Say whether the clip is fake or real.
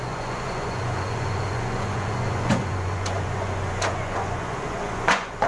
fake